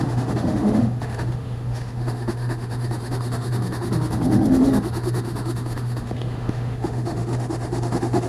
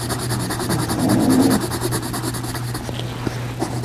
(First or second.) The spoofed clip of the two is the first